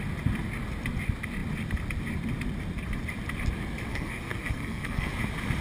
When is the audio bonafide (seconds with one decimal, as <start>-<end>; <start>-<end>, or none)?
0.0-3.9; 5.1-5.6